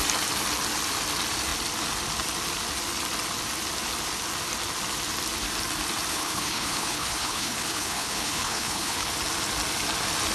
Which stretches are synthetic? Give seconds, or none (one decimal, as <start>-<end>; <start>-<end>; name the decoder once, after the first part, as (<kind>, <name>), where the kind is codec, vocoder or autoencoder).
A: 6.1-9.1 (codec, HILCodec)